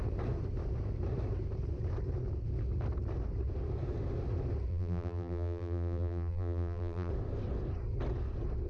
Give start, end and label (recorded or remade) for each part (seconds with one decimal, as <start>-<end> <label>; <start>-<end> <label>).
0.0-4.7 recorded; 4.7-7.1 remade; 7.1-8.7 recorded